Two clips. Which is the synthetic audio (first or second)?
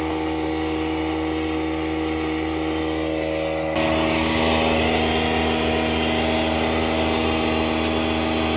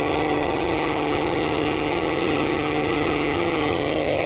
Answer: second